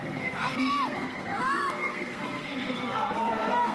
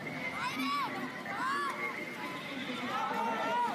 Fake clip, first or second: first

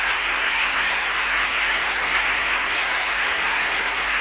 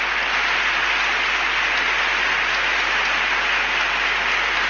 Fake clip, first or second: first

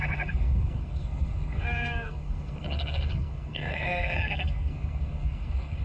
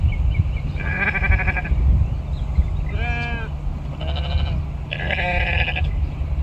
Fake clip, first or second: first